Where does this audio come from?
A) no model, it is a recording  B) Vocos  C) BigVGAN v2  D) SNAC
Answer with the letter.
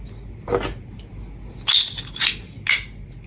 A